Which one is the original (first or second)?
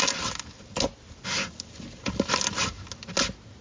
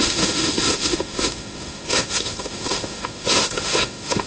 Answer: first